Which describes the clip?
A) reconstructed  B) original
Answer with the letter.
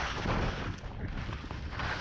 B